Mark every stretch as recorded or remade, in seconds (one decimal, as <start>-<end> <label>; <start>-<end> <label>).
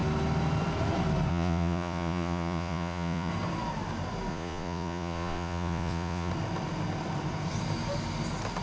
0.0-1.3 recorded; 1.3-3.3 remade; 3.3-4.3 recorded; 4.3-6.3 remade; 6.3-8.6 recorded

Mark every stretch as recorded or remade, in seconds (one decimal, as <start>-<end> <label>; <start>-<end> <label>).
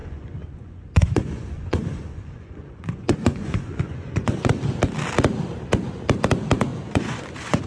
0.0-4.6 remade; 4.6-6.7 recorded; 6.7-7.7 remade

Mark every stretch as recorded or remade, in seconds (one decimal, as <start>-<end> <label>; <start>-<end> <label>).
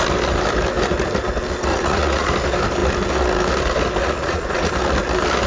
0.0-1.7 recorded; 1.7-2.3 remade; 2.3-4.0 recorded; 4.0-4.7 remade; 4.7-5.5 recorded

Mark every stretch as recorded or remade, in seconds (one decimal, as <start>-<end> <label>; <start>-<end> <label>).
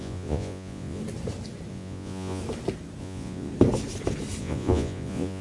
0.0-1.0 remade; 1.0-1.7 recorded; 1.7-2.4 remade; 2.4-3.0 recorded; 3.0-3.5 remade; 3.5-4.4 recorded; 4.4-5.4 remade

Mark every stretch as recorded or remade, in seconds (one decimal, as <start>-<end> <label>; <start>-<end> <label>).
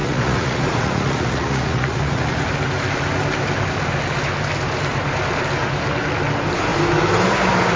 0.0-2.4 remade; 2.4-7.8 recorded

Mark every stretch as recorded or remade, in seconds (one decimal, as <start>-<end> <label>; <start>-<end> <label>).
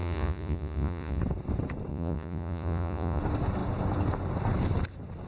0.0-1.2 remade; 1.2-1.9 recorded; 1.9-3.2 remade; 3.2-5.3 recorded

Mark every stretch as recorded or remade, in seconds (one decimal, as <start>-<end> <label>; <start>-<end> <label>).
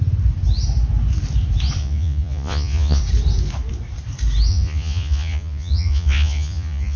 0.0-1.8 recorded; 1.8-3.0 remade; 3.0-4.5 recorded; 4.5-7.0 remade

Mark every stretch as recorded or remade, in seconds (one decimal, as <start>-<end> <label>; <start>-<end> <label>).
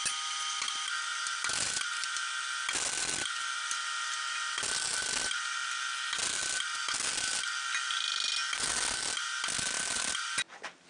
0.0-10.9 recorded